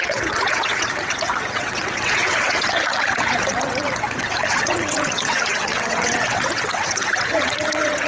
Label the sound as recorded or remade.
remade